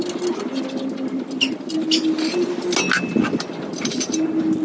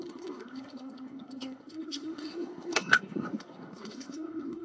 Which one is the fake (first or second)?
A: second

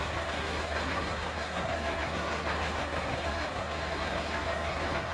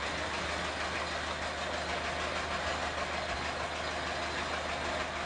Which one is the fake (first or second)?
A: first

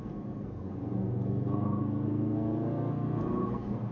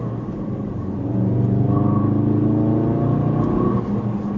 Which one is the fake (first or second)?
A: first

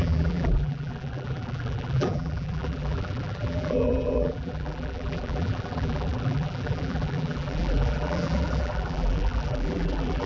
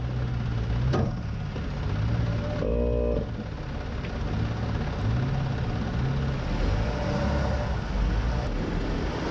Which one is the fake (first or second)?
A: first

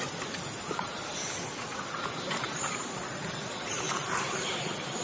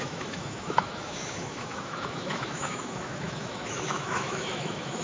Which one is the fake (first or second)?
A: second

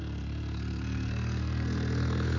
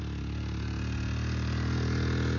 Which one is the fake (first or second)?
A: first